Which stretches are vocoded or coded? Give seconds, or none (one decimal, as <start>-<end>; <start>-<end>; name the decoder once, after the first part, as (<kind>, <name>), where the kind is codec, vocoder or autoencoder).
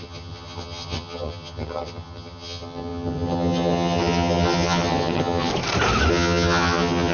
0.0-5.5 (vocoder, HiFi-GAN); 6.1-7.1